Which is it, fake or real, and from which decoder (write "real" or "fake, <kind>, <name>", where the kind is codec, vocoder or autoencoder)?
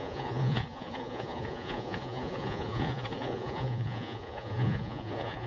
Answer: fake, vocoder, Vocos